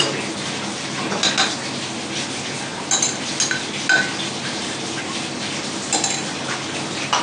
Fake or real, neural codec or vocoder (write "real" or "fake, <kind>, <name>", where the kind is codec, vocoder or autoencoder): real